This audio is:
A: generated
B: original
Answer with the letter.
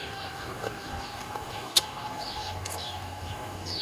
A